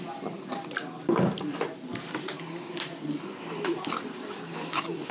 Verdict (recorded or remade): recorded